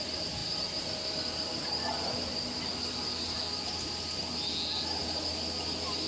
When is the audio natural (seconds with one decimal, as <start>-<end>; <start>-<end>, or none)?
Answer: 0.0-6.1